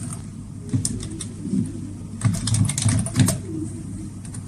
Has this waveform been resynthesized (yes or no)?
no